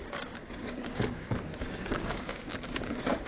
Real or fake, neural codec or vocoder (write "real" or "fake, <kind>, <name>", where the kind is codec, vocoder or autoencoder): fake, codec, DAC